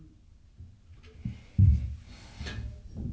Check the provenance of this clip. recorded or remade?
recorded